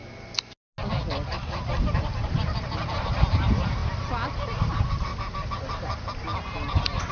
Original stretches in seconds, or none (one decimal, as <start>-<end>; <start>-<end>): 0.0-1.3; 3.8-4.3; 5.1-7.1